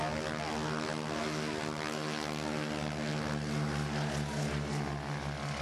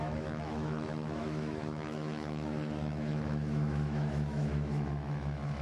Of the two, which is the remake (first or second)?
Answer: second